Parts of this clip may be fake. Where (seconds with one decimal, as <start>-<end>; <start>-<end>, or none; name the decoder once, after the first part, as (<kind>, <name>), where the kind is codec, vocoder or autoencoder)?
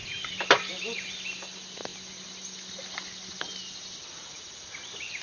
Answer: 0.0-1.9 (vocoder, BigVGAN v2)